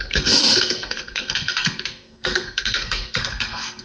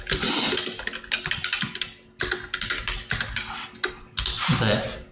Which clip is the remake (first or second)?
first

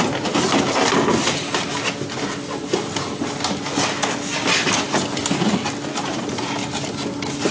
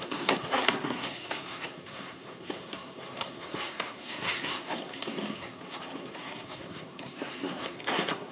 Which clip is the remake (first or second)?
second